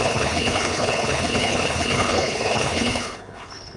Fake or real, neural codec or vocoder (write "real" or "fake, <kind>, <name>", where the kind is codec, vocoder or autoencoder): fake, codec, HILCodec